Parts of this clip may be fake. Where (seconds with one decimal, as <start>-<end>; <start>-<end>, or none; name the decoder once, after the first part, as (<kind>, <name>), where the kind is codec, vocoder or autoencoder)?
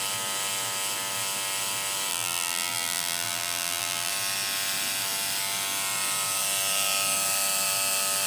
2.1-4.1 (vocoder, BigVGAN v2)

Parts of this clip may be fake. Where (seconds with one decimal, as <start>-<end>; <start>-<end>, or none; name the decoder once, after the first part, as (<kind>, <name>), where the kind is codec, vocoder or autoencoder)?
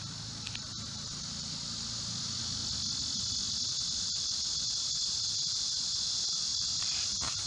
0.0-2.6 (vocoder, BigVGAN v2); 3.7-7.5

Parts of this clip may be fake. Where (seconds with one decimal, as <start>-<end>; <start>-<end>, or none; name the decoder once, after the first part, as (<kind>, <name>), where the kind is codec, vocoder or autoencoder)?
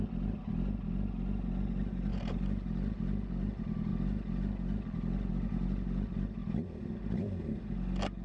2.1-3.0 (vocoder, BigVGAN v2)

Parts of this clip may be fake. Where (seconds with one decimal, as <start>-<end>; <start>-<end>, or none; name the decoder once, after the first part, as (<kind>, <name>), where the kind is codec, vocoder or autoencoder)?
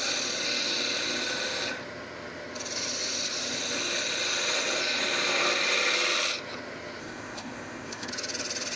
7.0-8.1 (codec, ZipCodec)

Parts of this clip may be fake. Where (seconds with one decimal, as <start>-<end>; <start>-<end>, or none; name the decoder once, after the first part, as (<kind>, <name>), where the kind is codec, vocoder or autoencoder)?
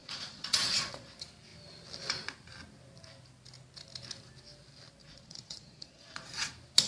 0.0-1.1 (vocoder, Vocos); 5.0-6.5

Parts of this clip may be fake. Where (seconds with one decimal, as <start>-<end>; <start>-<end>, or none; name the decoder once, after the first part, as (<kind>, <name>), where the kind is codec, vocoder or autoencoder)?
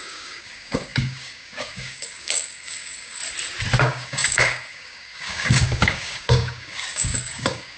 0.0-3.2 (codec, DAC); 3.8-7.8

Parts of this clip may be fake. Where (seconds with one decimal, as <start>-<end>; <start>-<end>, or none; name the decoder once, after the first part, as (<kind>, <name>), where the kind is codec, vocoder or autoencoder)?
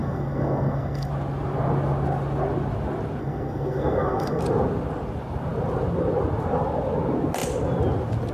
0.0-1.1 (codec, SNAC); 3.2-4.4